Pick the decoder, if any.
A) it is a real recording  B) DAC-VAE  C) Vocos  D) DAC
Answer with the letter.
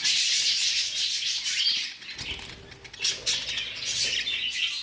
A